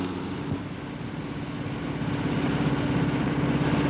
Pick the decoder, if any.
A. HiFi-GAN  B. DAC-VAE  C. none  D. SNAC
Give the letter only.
C